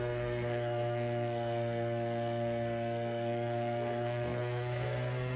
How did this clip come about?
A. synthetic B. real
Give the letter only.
A